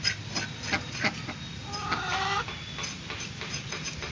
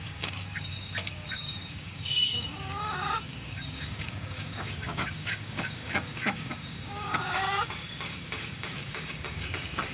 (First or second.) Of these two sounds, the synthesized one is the second